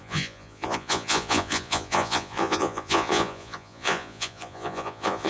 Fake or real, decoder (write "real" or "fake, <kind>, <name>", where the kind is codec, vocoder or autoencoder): fake, vocoder, Vocos